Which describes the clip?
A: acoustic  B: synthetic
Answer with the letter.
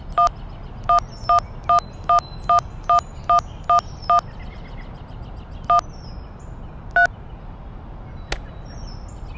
A